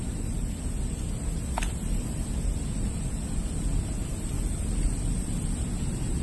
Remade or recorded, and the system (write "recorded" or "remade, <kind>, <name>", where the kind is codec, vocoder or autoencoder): recorded